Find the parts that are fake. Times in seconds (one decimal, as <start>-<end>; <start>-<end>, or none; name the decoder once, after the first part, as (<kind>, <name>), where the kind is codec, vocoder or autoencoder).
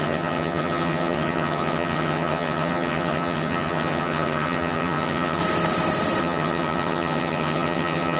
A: 0.0-5.4 (vocoder, HiFi-GAN); 6.2-8.2